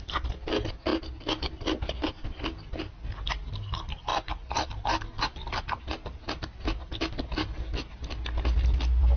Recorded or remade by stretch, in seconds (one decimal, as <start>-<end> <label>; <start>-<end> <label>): 0.0-9.2 recorded